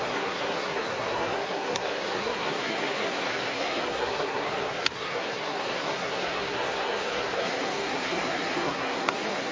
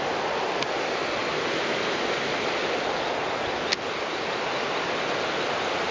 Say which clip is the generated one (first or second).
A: first